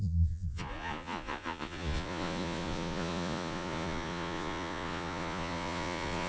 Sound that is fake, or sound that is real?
fake